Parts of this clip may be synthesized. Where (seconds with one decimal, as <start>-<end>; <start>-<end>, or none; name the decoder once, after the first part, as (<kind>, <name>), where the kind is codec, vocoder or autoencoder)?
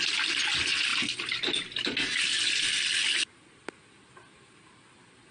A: none